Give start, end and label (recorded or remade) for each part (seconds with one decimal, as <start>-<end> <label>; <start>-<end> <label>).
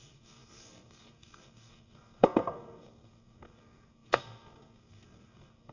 0.0-5.7 remade